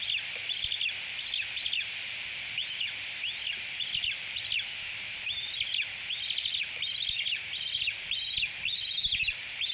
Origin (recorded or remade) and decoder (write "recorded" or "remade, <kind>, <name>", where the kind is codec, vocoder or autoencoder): recorded